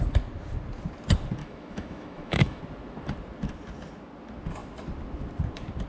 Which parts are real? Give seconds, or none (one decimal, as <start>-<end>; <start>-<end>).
0.0-1.4; 2.6-5.9